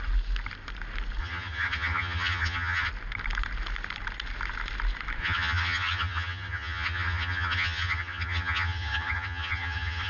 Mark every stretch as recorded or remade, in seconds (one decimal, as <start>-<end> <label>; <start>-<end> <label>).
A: 0.0-1.2 recorded; 1.2-2.9 remade; 2.9-5.2 recorded; 5.2-10.1 remade